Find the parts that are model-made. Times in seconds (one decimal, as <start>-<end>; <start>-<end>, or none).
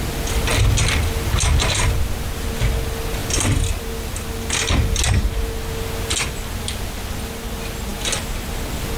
none